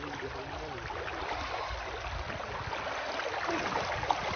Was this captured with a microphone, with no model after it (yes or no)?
yes